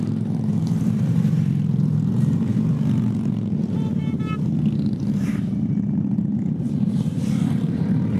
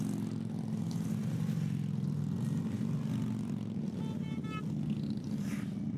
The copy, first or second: first